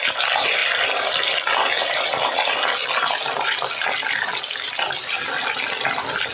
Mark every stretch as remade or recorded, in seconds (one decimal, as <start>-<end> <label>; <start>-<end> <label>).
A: 0.0-6.3 recorded